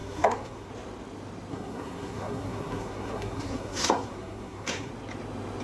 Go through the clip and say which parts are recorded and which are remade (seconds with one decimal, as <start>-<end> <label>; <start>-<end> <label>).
0.0-0.7 remade; 0.7-1.5 recorded; 1.5-4.9 remade; 4.9-5.6 recorded